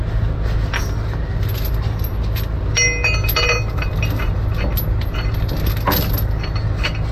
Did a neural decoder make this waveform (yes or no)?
no